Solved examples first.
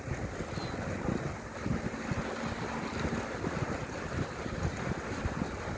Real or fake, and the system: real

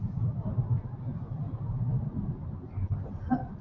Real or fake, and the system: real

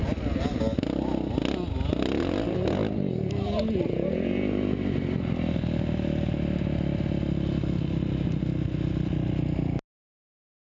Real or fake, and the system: real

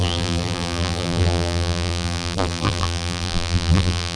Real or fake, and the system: fake, vocoder, BigVGAN v2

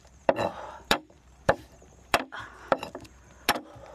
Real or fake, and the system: fake, vocoder, BigVGAN v2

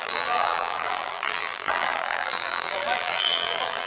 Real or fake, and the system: fake, vocoder, BigVGAN v2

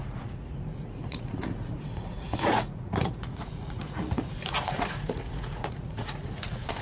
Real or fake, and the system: fake, vocoder, Vocos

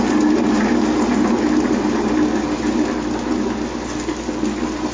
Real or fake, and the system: real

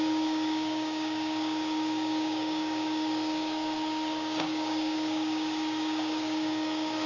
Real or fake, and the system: fake, codec, DAC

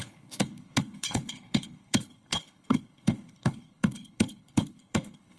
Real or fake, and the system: fake, codec, HILCodec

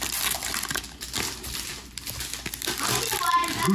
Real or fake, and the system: real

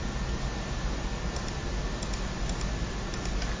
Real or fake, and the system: real